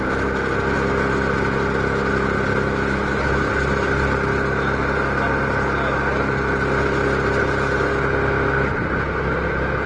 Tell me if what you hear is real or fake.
real